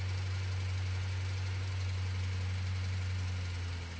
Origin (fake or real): real